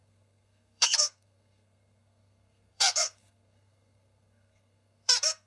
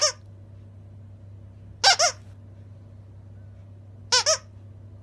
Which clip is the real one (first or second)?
second